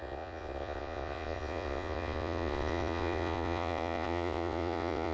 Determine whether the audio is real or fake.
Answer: fake